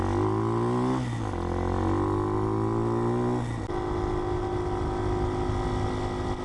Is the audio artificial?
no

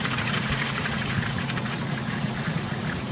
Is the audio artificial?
yes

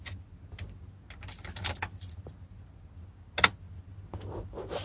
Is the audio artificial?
no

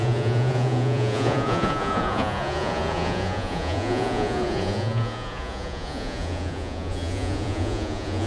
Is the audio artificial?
yes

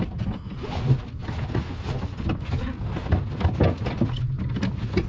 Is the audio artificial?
no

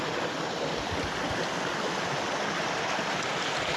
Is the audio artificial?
no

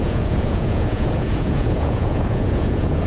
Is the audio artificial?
yes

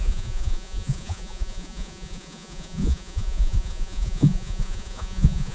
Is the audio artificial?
yes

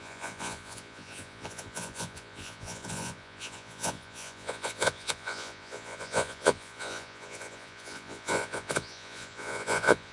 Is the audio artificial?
yes